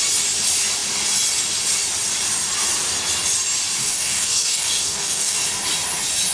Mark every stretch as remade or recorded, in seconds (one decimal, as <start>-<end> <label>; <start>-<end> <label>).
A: 0.0-3.8 recorded; 3.8-5.4 remade; 5.4-6.3 recorded